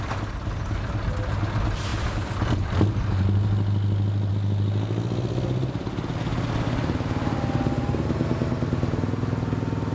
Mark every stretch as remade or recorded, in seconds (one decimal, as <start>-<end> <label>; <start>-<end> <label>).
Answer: 0.0-9.9 recorded